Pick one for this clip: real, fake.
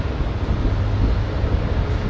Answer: real